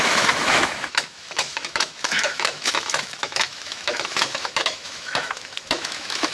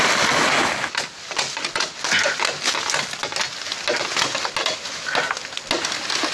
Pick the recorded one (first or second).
second